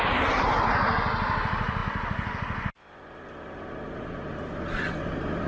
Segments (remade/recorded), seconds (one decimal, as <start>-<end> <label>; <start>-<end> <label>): 0.0-5.5 recorded